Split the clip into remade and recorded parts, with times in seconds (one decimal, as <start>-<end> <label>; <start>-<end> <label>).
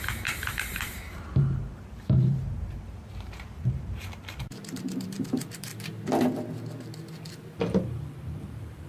0.0-5.7 remade; 5.7-7.6 recorded; 7.6-8.9 remade